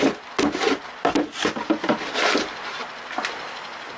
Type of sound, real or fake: real